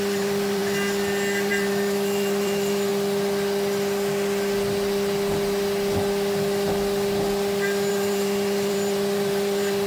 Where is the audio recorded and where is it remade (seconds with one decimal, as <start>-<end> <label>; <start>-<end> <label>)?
0.0-0.6 remade; 0.6-1.5 recorded; 1.5-2.9 remade; 2.9-7.9 recorded; 7.9-9.9 remade

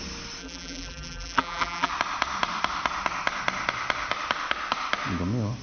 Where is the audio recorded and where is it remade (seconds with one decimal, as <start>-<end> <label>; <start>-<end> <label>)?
0.0-0.4 recorded; 0.4-1.9 remade; 1.9-5.6 recorded

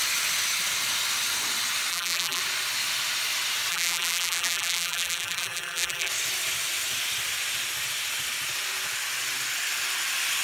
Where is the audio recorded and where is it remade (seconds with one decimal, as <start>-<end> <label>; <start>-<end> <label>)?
0.0-1.9 recorded; 1.9-2.4 remade; 2.4-3.7 recorded; 3.7-6.1 remade; 6.1-10.4 recorded

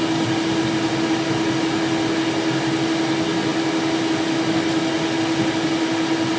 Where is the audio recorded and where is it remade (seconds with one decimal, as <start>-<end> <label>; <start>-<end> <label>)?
0.0-6.4 recorded

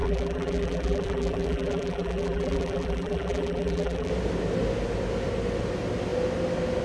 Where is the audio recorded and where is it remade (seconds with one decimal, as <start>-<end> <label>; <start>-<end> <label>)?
0.0-4.1 remade; 4.1-6.8 recorded